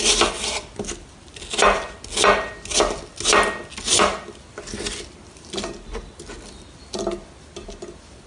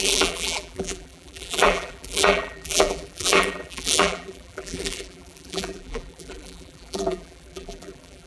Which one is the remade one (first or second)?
second